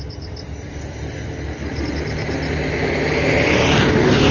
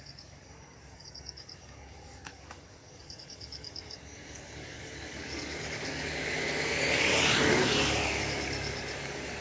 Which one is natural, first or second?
first